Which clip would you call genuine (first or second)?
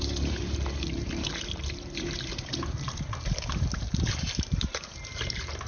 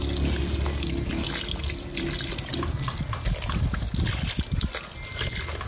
second